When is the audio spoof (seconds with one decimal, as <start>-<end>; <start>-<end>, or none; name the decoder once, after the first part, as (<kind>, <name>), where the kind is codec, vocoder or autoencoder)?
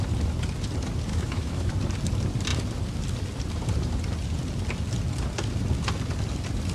1.1-1.7 (autoencoder, DAC-VAE)